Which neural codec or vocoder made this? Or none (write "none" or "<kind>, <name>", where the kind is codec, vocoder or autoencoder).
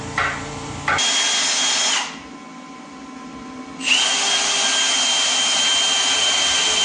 none